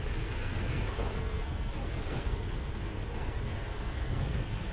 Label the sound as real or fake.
fake